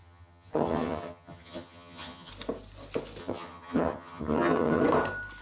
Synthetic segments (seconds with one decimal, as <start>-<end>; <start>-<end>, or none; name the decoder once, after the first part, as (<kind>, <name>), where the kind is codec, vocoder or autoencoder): 0.0-2.3 (vocoder, HiFi-GAN); 3.2-4.8